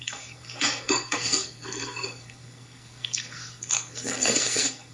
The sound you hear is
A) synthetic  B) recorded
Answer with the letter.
A